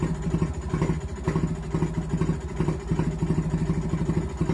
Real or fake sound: real